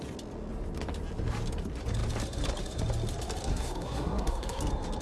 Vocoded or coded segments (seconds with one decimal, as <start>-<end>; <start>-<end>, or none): 3.5-4.6